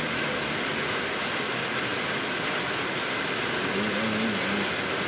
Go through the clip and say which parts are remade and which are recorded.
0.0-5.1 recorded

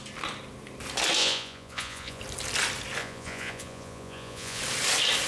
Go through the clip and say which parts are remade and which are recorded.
0.0-1.2 recorded; 1.2-2.2 remade; 2.2-3.0 recorded; 3.0-4.6 remade; 4.6-5.3 recorded

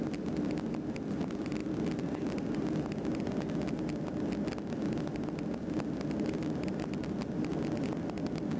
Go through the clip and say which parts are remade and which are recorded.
0.0-8.6 recorded

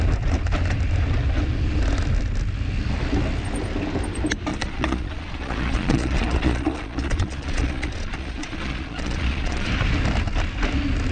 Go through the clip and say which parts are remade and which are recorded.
0.0-4.5 recorded; 4.5-9.7 remade; 9.7-11.1 recorded

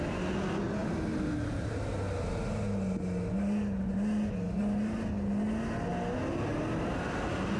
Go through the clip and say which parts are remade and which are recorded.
0.0-7.6 recorded

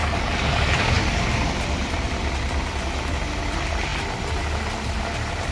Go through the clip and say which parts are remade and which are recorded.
0.0-1.2 remade; 1.2-5.5 recorded

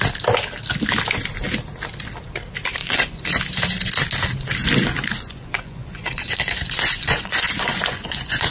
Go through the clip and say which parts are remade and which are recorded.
0.0-2.8 recorded; 2.8-3.4 remade; 3.4-5.1 recorded; 5.1-8.5 remade

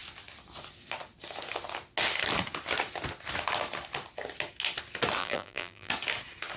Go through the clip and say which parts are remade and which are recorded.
0.0-5.2 recorded; 5.2-5.9 remade; 5.9-6.6 recorded